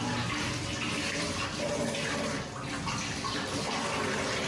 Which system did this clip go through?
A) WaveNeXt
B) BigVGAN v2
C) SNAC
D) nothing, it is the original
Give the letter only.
D